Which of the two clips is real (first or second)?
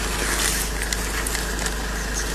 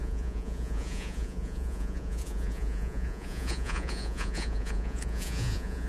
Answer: first